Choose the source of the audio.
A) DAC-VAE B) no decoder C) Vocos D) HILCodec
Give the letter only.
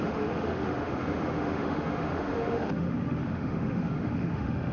A